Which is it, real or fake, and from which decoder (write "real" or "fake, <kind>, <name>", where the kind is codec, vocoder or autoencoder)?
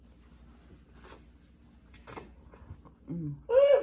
real